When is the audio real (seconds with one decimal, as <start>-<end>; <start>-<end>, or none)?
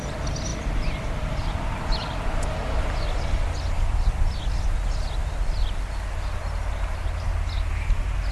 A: 0.0-8.3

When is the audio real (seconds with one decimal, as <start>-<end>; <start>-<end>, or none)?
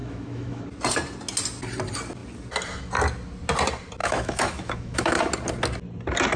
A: 0.6-4.0; 5.2-6.4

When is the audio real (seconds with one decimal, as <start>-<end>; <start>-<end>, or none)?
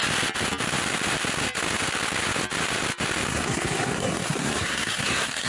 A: 0.0-3.3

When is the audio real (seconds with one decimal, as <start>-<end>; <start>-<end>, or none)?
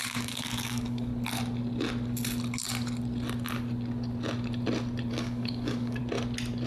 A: 1.1-5.1; 6.0-6.7